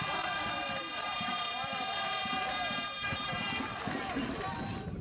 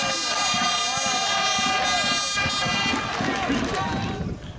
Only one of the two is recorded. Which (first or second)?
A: second